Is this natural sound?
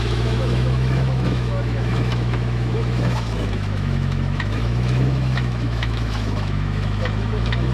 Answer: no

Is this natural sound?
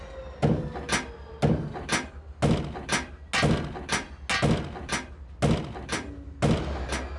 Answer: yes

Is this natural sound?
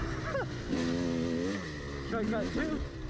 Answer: yes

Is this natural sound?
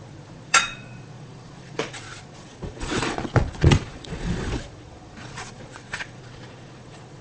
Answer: no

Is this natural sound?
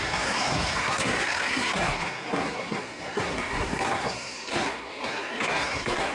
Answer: no